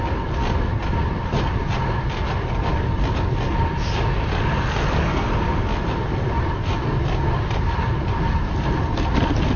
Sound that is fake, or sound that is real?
real